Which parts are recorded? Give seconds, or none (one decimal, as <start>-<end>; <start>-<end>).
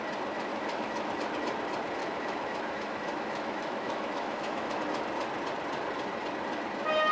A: 0.0-0.5; 1.2-2.0; 4.8-7.1